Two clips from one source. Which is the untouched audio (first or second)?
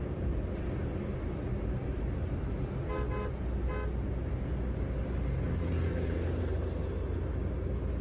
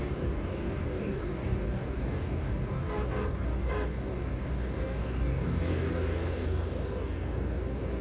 first